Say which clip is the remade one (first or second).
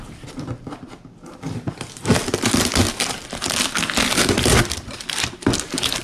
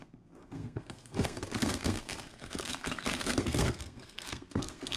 second